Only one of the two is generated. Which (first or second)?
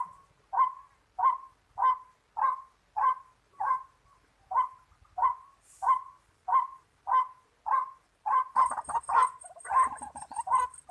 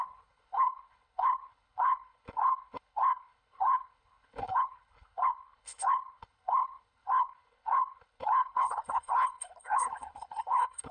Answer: second